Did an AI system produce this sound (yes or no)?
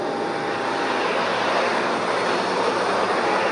no